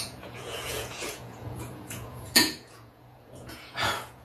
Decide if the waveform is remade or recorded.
remade